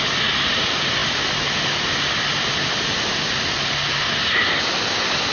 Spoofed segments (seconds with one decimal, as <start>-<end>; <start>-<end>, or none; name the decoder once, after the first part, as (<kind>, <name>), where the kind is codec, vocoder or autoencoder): none